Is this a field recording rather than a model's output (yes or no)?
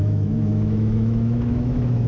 no